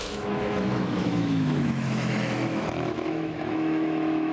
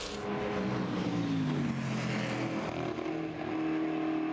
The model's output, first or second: first